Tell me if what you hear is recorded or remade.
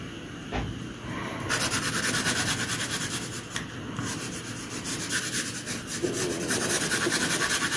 recorded